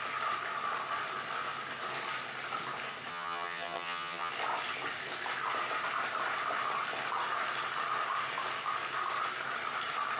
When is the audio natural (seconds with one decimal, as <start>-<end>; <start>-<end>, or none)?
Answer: 0.0-3.1; 4.3-10.2